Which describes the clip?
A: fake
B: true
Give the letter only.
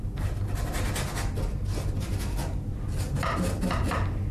B